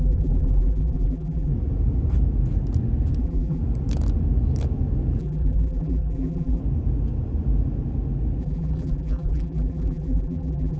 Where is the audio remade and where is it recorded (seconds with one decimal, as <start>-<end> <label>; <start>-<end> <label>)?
0.0-1.5 remade; 1.5-3.2 recorded; 3.2-3.6 remade; 3.6-5.2 recorded; 5.2-6.6 remade; 6.6-8.4 recorded; 8.4-10.8 remade